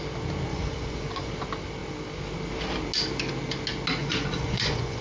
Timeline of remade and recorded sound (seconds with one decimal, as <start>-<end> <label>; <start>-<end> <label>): 0.0-0.5 recorded; 0.5-1.3 remade; 1.3-4.0 recorded; 4.0-5.0 remade